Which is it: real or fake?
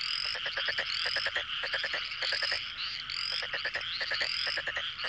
real